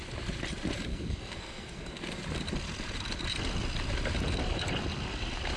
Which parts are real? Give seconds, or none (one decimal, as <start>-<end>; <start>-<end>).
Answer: 0.0-0.9; 2.0-5.6